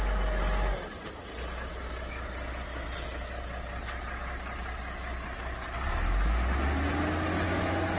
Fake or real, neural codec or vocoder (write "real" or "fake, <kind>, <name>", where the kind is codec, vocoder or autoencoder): real